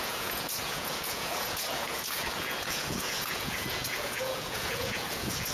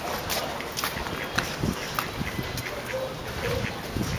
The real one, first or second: second